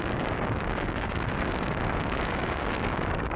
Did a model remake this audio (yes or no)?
yes